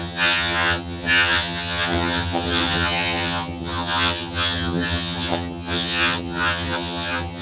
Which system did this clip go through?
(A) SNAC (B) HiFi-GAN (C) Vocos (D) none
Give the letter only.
B